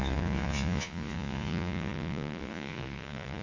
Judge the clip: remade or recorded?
remade